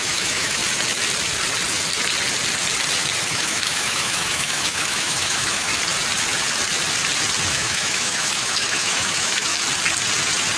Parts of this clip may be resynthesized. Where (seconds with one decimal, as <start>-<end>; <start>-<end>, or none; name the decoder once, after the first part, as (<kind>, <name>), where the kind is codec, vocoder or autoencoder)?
0.0-0.6 (autoencoder, DAC-VAE); 3.3-5.7; 7.5-9.5

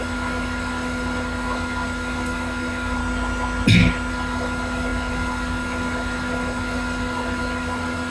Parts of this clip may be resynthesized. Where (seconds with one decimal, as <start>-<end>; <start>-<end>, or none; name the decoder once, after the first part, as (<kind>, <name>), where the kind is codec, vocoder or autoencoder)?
0.0-3.0 (codec, DAC); 4.1-8.1